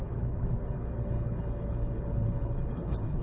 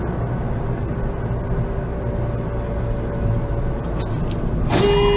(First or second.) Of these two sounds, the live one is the second